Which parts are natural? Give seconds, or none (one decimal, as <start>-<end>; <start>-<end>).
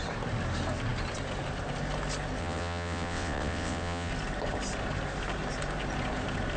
0.0-2.4; 4.1-6.6